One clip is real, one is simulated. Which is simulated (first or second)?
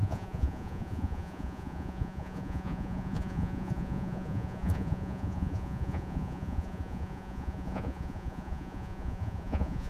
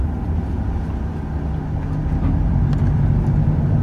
first